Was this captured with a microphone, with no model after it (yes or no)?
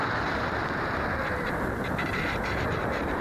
yes